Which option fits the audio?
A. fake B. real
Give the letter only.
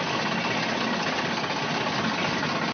B